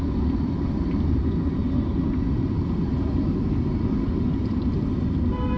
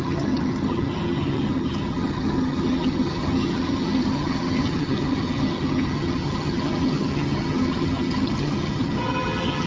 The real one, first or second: first